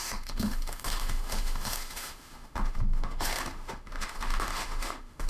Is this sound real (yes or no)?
no